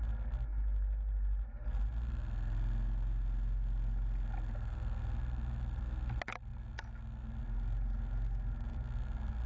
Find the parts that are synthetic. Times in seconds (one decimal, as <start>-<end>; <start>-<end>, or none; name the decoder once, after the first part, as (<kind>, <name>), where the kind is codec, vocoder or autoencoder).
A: none